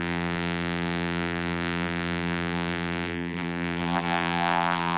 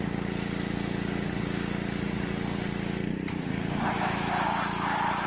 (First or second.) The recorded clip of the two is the second